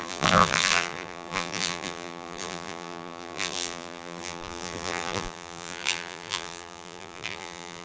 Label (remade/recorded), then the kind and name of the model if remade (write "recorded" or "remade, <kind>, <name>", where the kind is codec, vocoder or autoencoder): remade, vocoder, BigVGAN v2